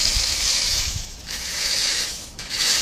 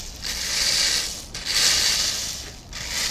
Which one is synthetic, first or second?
first